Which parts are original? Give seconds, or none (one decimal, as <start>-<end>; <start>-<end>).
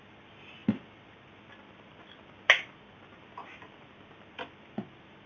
0.0-5.3